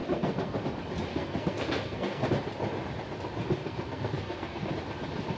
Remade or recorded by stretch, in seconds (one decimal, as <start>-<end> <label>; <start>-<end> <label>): 0.0-0.6 remade; 0.6-1.1 recorded; 1.1-2.3 remade; 2.3-3.6 recorded; 3.6-4.7 remade; 4.7-5.4 recorded